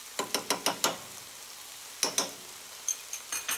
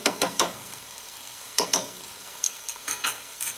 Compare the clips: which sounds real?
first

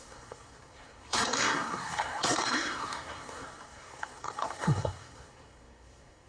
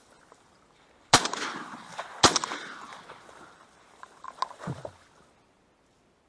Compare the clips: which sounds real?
second